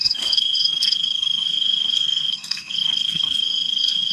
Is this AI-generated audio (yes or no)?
yes